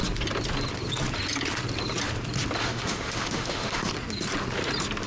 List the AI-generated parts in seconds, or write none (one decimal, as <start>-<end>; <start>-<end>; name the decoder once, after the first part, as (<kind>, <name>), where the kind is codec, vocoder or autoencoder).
2.6-3.9 (autoencoder, DAC-VAE)